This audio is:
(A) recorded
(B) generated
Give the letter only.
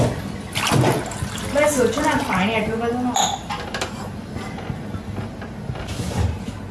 A